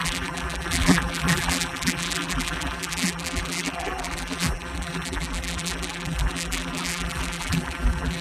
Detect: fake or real fake